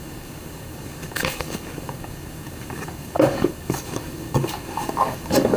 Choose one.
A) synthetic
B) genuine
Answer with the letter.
A